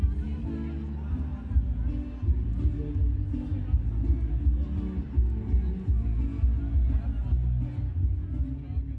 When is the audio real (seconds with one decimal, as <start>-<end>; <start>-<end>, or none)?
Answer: 0.0-9.0